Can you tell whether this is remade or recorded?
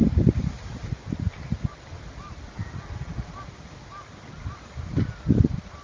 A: recorded